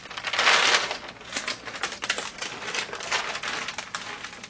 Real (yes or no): yes